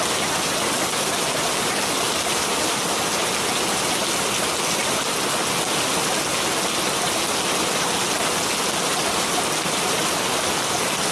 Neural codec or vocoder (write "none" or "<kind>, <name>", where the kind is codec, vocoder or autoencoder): none